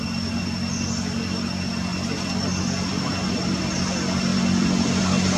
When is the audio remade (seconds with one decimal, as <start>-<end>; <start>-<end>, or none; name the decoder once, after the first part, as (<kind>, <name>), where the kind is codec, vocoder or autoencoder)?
1.9-3.7 (vocoder, BigVGAN v2); 4.3-5.0